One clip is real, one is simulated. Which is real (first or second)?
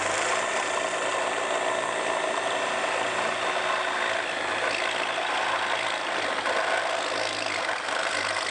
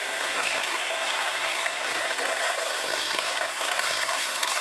first